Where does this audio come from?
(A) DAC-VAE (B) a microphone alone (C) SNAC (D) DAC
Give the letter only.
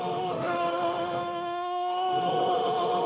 A